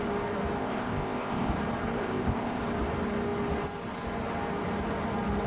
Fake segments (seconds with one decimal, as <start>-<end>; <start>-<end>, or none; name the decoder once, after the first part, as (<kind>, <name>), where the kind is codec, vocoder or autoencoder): 0.6-1.5 (codec, ZipCodec); 2.0-2.6